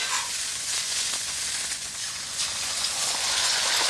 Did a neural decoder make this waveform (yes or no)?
yes